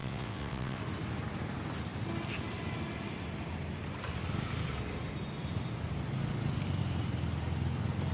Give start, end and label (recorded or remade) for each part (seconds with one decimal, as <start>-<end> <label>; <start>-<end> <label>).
0.0-0.8 remade; 0.8-8.1 recorded